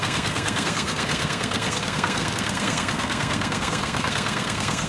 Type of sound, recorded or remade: remade